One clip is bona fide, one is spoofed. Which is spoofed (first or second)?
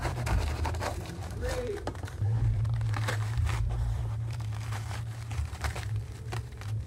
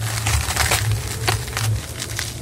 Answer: first